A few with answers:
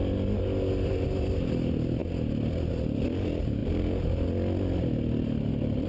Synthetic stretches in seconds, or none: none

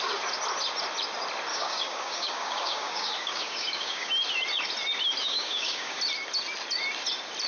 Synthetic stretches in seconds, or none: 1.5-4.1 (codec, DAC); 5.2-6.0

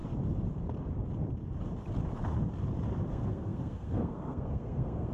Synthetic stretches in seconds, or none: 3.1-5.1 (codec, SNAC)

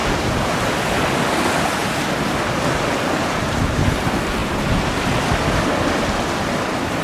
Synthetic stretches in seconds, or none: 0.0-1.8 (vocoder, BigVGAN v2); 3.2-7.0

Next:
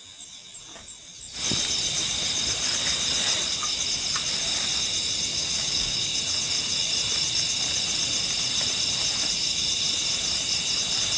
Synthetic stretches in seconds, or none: 5.3-6.2 (codec, DAC)

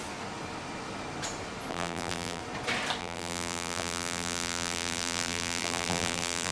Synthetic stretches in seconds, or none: 1.7-2.4 (vocoder, BigVGAN v2); 3.0-6.5

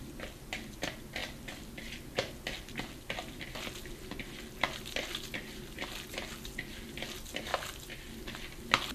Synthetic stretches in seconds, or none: none